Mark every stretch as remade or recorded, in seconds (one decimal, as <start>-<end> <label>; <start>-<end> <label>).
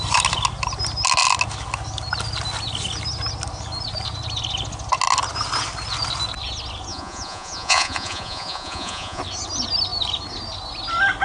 0.0-6.9 recorded; 6.9-9.2 remade; 9.2-11.2 recorded